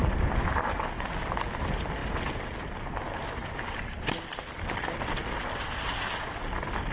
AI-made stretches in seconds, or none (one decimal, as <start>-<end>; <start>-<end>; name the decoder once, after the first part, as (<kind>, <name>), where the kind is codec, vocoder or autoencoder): none